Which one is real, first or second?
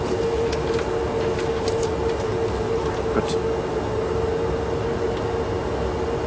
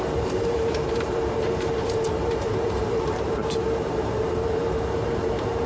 first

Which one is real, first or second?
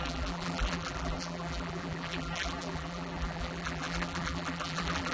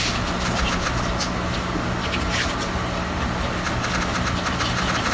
second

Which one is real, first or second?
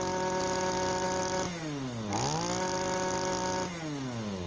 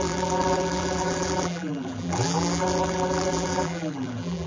first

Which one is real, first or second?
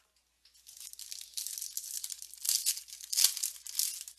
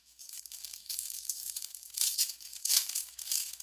first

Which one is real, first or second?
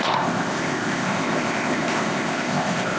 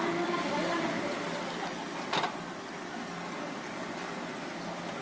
second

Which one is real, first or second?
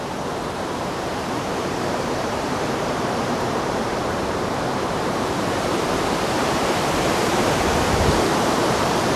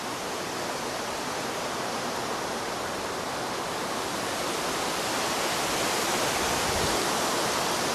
second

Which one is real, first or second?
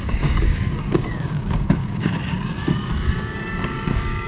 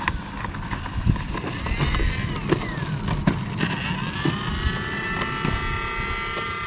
second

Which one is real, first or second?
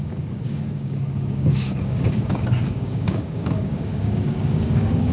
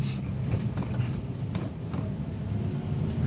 second